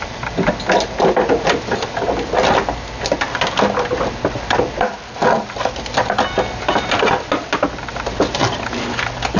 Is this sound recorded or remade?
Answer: recorded